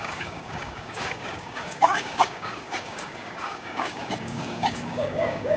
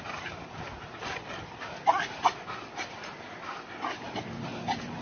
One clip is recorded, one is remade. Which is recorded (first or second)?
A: second